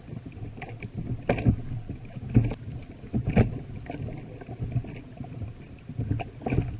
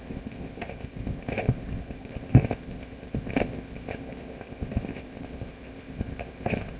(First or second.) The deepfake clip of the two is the second